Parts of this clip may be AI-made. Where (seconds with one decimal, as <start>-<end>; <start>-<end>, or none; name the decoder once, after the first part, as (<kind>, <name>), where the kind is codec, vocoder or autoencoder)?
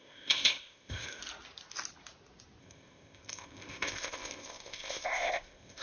0.0-1.2 (codec, ZipCodec); 2.6-5.8